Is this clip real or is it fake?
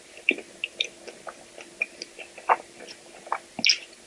real